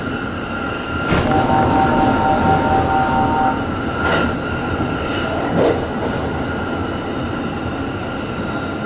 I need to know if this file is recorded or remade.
recorded